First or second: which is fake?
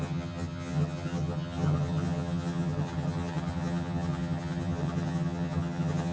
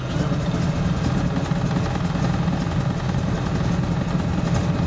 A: first